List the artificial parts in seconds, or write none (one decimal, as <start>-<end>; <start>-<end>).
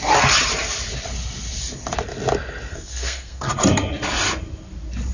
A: 2.7-3.5